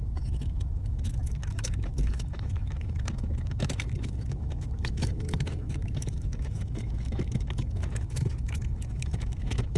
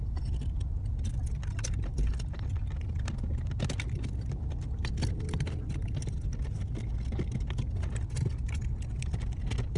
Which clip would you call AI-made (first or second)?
first